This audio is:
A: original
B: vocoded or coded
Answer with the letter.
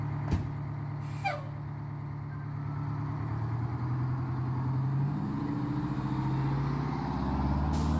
A